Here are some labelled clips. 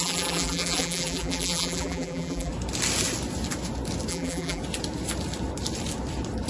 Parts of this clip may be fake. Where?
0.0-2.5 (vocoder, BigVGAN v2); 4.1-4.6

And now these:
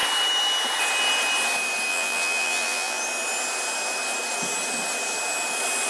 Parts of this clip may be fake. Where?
1.9-3.0 (vocoder, BigVGAN v2)

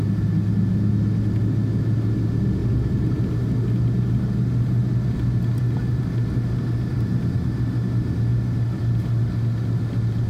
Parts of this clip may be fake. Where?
2.6-3.2 (vocoder, BigVGAN v2); 6.9-7.4; 8.3-9.0

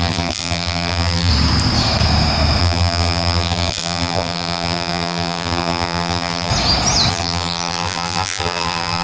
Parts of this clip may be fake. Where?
0.0-1.3 (vocoder, BigVGAN v2); 2.6-6.5; 7.1-9.0

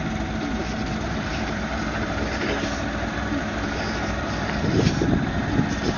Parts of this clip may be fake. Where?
1.3-4.8 (vocoder, BigVGAN v2)